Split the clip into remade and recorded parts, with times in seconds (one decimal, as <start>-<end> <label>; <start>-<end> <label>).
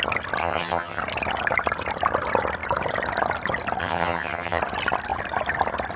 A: 0.0-0.4 recorded; 0.4-1.0 remade; 1.0-3.8 recorded; 3.8-4.6 remade; 4.6-6.0 recorded